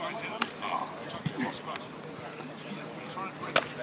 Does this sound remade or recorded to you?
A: recorded